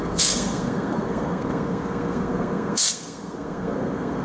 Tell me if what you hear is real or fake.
fake